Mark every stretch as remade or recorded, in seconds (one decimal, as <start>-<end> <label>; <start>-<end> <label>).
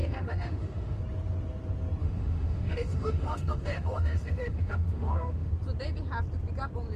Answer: 0.0-1.0 remade; 1.0-2.0 recorded; 2.0-5.5 remade; 5.5-7.0 recorded